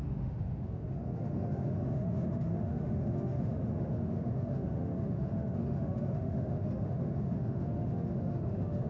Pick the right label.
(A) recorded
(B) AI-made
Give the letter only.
B